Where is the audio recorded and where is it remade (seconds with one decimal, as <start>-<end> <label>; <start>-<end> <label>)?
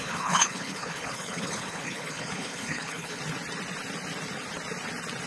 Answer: 0.0-3.2 remade; 3.2-5.3 recorded